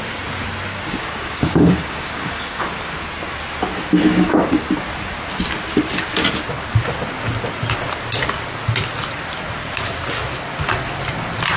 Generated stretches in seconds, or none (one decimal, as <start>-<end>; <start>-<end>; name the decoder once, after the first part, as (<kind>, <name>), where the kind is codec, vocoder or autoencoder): 0.7-2.6 (codec, DAC); 4.0-4.7